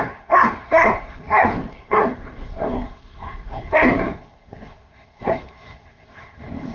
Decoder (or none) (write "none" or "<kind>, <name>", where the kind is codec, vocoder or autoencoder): codec, SNAC